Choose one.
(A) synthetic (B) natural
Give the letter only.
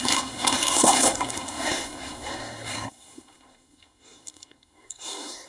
A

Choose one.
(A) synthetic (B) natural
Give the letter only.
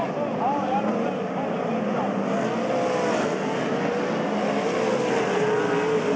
B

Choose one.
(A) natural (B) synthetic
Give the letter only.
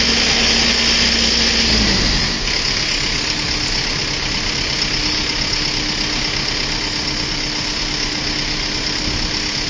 A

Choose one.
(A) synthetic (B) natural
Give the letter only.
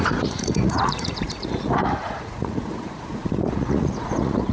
A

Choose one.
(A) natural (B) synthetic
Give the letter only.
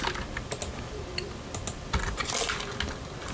A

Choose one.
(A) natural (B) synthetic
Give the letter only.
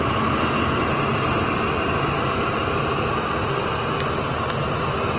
A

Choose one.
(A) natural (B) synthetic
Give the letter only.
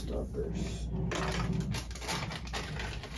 A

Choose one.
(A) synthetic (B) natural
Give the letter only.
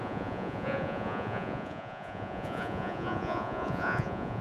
A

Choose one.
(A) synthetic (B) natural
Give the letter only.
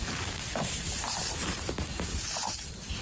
A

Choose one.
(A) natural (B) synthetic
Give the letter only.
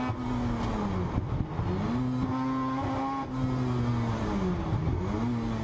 A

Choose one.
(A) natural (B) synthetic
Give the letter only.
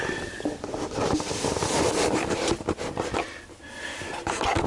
A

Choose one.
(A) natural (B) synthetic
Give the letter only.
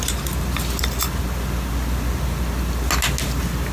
A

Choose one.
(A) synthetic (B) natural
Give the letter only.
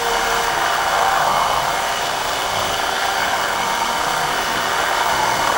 A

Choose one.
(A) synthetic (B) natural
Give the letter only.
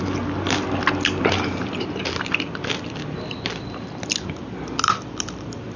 B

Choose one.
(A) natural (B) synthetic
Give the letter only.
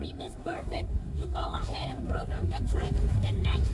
B